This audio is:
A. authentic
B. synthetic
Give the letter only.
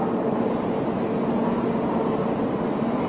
A